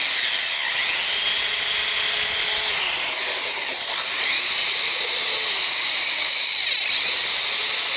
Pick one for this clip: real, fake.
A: real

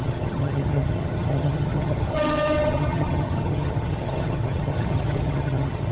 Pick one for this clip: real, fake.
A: fake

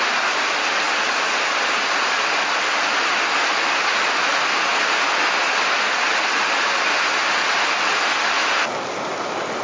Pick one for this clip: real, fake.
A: real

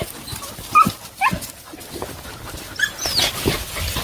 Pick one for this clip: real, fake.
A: real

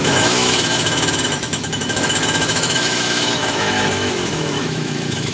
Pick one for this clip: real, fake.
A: fake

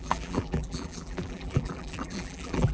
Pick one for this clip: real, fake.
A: fake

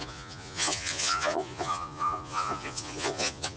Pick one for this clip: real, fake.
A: fake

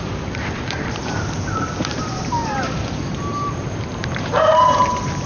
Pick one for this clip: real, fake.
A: fake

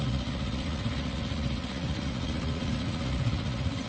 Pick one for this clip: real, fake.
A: fake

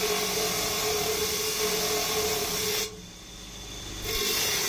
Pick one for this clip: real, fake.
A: real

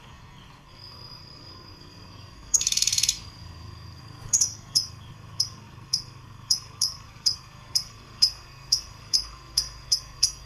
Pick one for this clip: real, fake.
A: fake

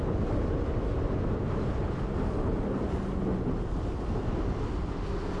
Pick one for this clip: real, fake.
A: real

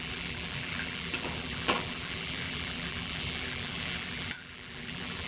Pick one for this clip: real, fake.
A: fake